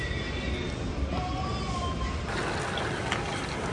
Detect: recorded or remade recorded